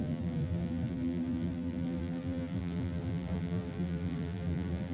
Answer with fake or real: fake